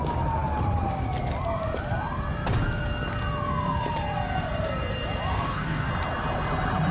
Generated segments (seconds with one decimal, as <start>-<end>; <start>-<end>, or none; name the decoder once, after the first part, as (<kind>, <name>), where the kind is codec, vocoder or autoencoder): 5.3-5.9 (codec, DAC)